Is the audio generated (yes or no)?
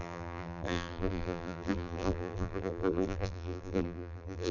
yes